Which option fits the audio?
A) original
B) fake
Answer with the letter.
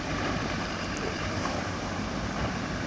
B